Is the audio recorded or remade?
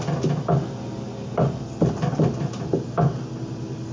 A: recorded